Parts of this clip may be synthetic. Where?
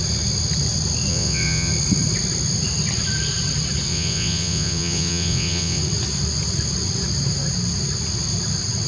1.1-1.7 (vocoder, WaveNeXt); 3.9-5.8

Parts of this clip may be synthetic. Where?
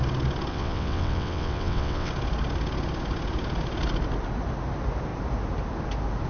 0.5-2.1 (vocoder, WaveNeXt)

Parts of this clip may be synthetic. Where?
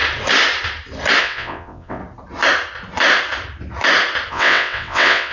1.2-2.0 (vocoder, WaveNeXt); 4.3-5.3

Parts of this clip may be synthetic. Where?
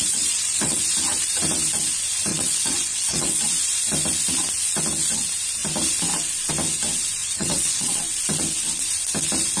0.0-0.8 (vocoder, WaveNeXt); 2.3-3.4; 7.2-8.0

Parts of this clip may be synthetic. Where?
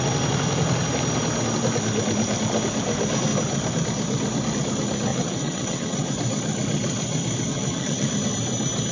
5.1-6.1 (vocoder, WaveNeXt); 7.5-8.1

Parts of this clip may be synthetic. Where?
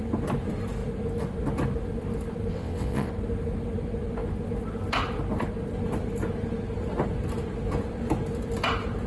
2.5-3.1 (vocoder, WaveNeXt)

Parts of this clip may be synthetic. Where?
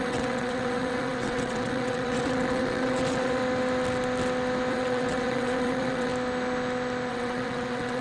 0.0-3.4 (vocoder, WaveNeXt); 4.7-6.1; 7.1-8.0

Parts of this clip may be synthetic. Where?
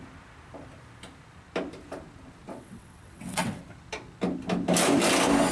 2.5-3.6 (vocoder, WaveNeXt)